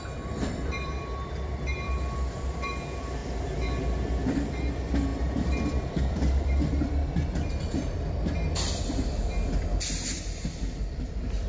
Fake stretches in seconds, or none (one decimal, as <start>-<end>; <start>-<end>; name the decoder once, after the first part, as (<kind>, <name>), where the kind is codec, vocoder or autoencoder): 0.0-11.5 (vocoder, BigVGAN v2)